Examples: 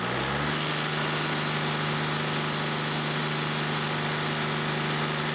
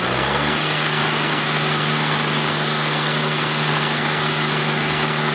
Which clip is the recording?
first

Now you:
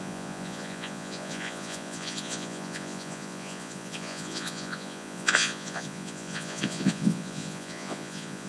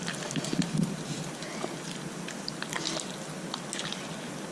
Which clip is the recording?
second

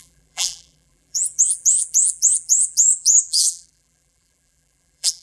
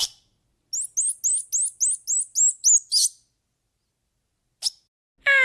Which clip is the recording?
second